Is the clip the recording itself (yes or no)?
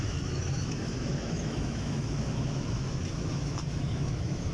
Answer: no